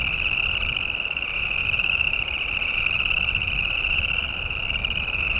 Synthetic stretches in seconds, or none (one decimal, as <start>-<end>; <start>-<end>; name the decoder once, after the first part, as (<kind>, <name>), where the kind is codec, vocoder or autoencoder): none